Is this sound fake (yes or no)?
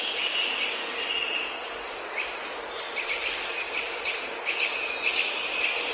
no